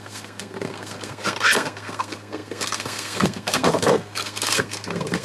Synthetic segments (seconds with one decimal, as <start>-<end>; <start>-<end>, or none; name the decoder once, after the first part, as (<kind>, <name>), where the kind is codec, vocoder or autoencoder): 0.0-5.2 (codec, SNAC)